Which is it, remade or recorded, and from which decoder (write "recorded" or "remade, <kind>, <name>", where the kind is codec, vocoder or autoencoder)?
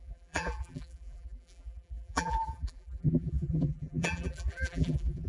remade, vocoder, BigVGAN v2